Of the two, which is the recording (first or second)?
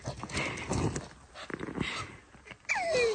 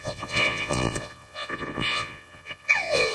first